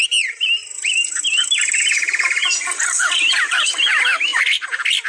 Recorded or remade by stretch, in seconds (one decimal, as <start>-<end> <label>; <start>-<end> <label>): 0.0-0.6 recorded; 0.6-3.7 remade; 3.7-5.1 recorded